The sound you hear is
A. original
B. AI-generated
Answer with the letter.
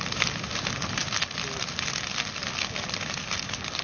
A